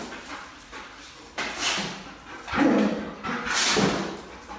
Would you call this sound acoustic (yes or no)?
yes